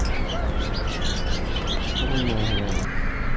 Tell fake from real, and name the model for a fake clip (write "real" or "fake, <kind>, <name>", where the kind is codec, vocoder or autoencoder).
real